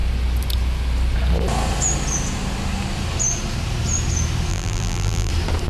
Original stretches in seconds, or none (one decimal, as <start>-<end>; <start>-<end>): 0.0-4.5; 5.3-5.7